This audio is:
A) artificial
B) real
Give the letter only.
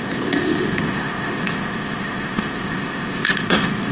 A